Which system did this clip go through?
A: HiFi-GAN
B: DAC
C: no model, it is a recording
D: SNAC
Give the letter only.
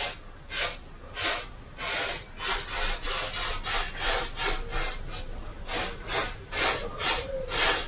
C